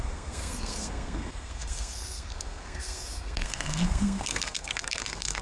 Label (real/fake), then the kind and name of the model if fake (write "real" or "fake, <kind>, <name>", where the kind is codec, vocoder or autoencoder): fake, codec, SNAC